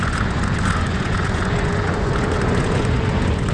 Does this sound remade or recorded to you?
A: remade